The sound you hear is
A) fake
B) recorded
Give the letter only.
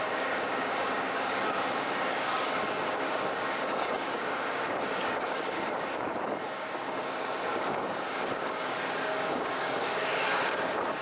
A